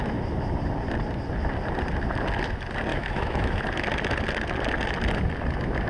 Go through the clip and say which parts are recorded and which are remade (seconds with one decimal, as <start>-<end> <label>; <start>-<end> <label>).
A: 0.0-2.9 recorded; 2.9-3.6 remade; 3.6-5.9 recorded